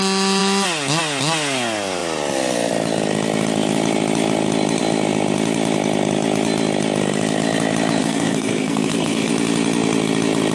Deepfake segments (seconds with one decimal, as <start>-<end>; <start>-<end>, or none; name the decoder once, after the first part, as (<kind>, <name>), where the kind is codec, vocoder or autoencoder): 8.0-9.3 (codec, SNAC)